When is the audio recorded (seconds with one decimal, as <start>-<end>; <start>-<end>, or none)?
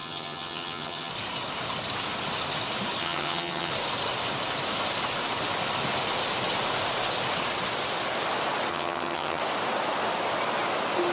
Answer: 1.1-3.0; 3.7-8.7; 9.4-11.1